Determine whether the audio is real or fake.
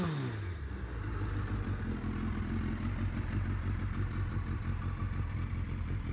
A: real